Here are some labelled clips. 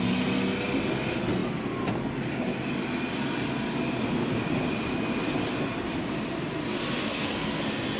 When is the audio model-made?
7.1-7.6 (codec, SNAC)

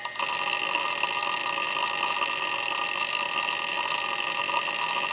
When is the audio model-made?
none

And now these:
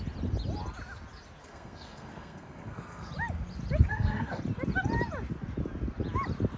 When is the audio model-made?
1.4-3.1 (codec, SNAC); 3.9-4.4